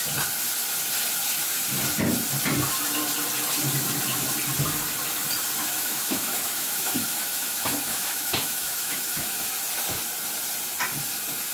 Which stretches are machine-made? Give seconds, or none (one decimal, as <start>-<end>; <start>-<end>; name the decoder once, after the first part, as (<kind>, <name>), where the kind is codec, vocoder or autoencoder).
5.6-9.5 (autoencoder, DAC-VAE)